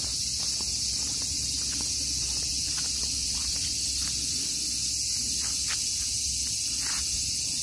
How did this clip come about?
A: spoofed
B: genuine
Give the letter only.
B